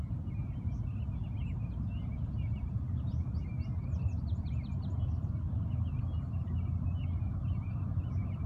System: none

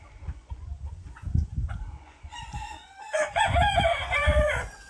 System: vocoder, Vocos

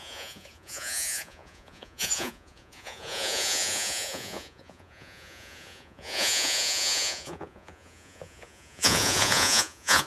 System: vocoder, Vocos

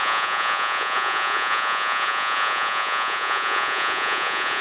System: vocoder, Vocos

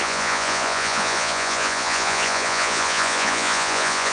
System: vocoder, Vocos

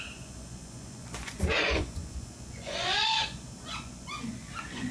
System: vocoder, Vocos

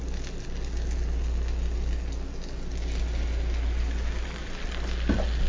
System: none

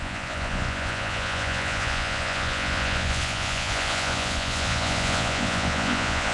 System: vocoder, Vocos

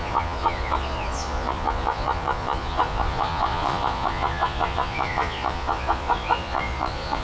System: vocoder, Vocos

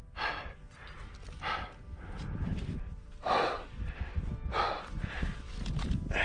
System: none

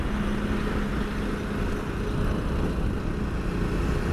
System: none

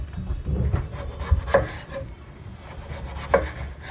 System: none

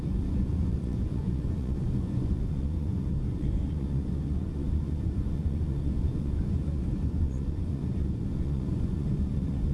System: vocoder, Vocos